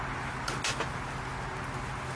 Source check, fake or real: real